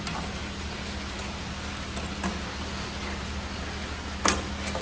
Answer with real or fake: real